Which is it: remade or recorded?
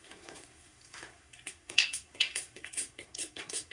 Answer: remade